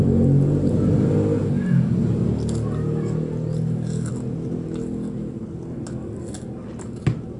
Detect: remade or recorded recorded